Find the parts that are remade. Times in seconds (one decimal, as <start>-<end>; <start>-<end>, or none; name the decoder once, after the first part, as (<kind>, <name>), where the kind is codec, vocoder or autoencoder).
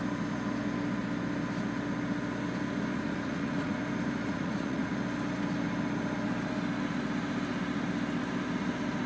2.9-3.8 (vocoder, Vocos); 4.2-4.9